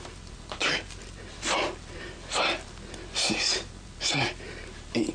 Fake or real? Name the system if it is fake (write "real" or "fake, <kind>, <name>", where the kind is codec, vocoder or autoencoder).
real